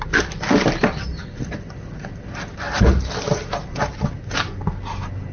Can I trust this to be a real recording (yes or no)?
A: yes